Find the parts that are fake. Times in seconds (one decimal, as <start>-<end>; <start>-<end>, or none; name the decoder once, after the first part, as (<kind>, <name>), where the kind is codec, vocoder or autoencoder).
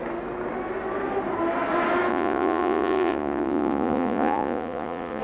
2.1-5.2 (vocoder, Vocos)